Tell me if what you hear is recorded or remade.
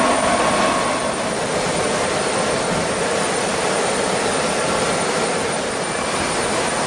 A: recorded